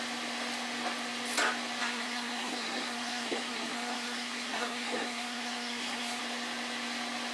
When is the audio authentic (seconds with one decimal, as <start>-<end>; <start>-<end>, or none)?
0.0-1.8; 6.2-7.3